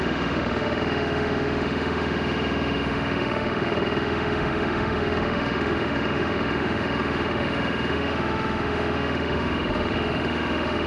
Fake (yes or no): yes